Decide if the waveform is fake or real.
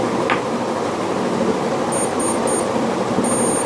real